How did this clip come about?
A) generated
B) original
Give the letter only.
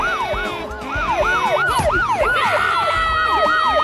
B